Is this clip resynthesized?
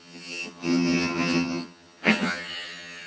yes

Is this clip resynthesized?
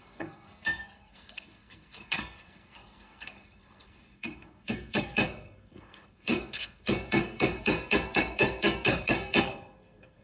yes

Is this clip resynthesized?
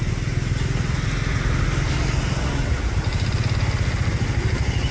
no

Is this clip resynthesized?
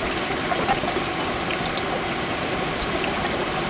no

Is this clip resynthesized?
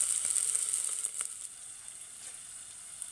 no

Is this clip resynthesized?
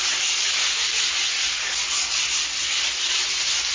no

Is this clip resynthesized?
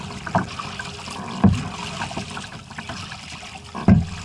no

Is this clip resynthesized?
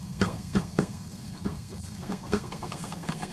yes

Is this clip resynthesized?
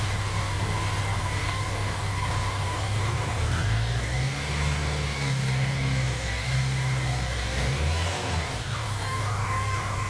yes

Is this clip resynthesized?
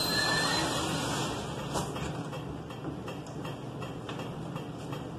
no